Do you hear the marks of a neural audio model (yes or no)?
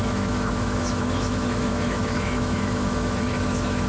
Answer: yes